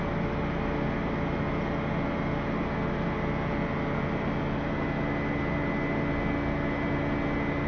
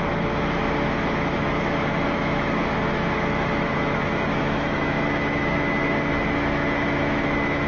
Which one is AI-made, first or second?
second